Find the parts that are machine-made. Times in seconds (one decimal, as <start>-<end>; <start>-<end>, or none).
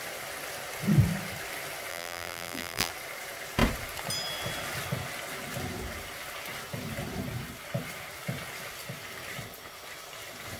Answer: 1.9-2.9